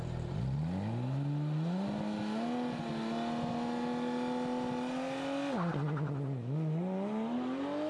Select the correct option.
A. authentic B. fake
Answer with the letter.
A